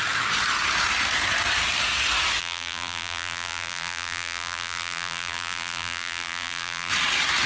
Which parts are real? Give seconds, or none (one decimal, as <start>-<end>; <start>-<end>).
0.0-2.4; 6.9-7.5